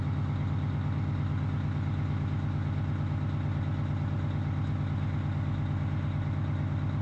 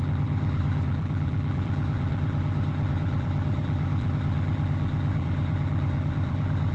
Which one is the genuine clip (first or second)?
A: first